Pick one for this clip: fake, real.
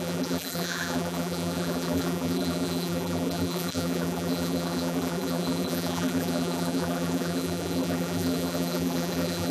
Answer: fake